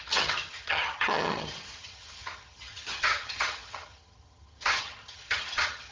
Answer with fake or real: fake